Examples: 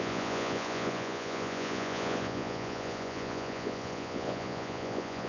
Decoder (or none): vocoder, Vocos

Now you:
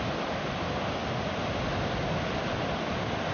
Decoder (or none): none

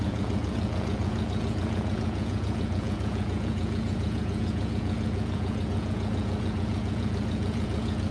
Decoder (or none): vocoder, Vocos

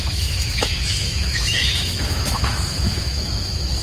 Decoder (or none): autoencoder, DAC-VAE